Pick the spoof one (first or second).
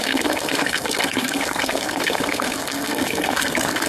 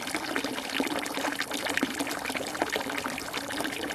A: first